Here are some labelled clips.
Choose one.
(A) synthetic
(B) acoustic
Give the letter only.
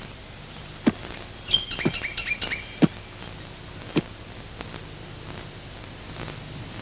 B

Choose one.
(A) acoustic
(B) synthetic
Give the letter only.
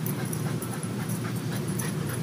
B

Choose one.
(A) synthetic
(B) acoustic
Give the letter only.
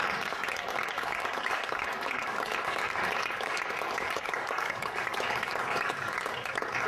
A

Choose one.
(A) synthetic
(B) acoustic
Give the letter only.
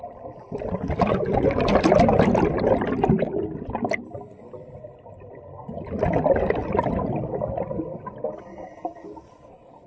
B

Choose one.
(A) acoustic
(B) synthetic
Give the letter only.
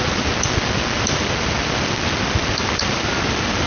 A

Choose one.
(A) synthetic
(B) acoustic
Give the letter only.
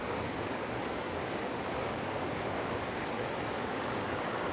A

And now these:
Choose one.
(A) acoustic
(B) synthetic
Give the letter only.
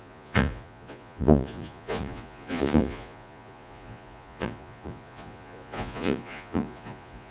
B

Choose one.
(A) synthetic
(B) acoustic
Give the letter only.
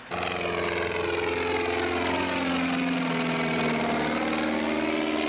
B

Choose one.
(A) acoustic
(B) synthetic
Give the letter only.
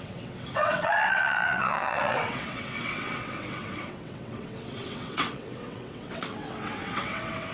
B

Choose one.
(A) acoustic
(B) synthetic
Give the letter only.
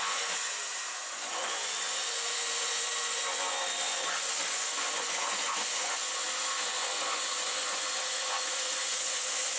B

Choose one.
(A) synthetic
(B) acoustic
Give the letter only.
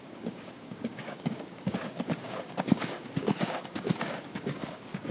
A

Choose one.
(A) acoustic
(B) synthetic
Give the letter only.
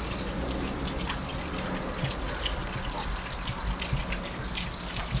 A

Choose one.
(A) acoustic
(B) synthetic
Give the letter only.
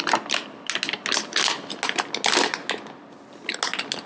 A